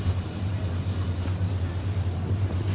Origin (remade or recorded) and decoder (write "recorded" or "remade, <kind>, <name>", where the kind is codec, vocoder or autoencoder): recorded